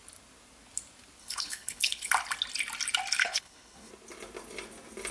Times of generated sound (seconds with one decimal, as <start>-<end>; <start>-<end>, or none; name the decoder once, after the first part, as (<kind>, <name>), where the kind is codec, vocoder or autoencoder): 1.2-2.1 (codec, HILCodec); 3.2-3.9

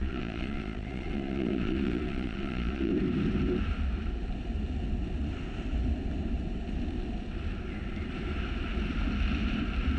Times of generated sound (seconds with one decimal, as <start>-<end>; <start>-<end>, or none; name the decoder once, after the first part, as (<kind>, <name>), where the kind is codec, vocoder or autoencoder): 0.0-2.9 (vocoder, Vocos)